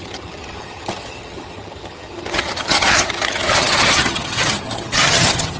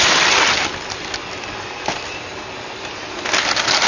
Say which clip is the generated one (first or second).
first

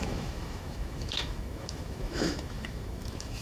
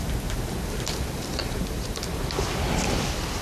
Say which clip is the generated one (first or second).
first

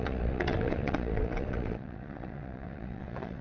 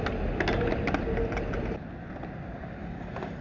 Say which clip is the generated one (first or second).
first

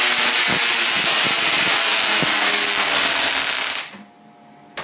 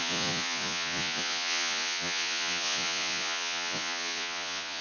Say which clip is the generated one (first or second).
second